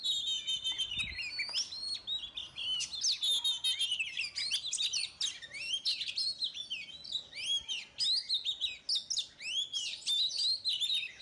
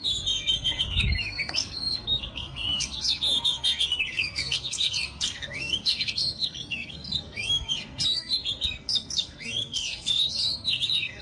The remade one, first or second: second